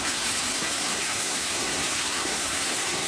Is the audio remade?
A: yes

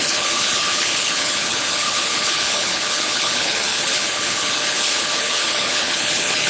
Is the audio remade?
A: yes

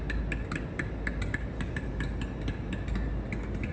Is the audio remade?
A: no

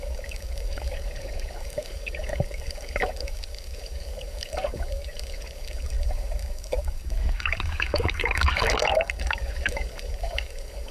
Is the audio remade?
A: yes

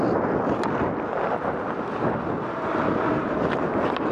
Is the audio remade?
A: no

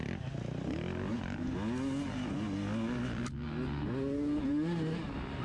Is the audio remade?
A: no